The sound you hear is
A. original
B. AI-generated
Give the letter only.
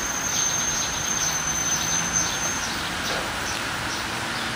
A